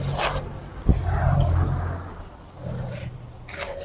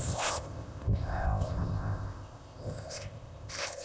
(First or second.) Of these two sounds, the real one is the first